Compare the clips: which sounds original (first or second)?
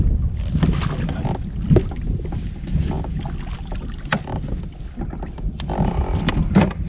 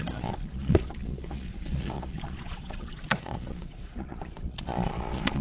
first